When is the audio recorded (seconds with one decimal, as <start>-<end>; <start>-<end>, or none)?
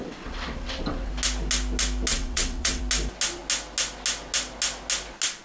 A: 1.1-2.1; 2.8-5.4